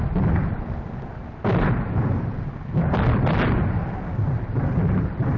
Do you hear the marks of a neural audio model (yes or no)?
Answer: no